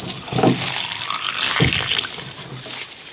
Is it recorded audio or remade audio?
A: recorded